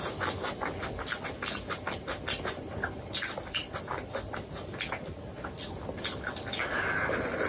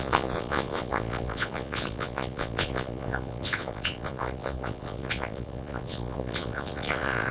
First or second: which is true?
first